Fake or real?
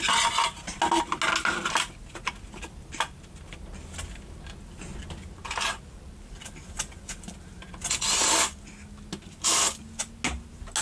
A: real